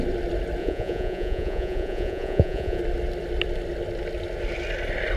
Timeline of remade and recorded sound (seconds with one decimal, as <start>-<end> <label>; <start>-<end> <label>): 0.0-0.6 recorded; 0.6-2.8 remade; 2.8-5.2 recorded